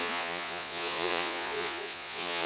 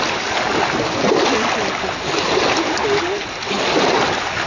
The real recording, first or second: second